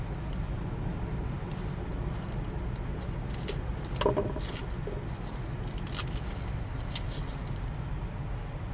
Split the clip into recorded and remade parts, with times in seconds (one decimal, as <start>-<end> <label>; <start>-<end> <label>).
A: 0.0-8.7 recorded